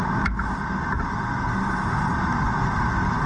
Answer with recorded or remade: recorded